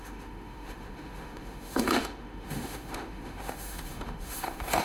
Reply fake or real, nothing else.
fake